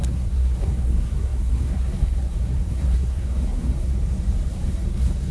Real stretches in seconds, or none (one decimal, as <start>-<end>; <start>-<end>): 3.9-4.5